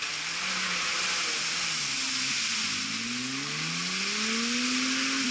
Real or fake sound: real